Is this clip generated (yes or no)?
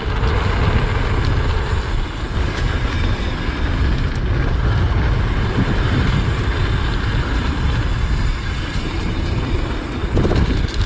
no